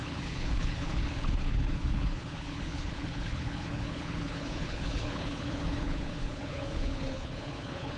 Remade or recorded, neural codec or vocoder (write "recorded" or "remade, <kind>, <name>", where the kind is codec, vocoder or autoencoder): remade, codec, HILCodec